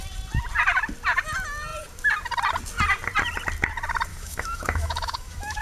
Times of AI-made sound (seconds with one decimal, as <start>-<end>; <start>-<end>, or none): 4.1-5.6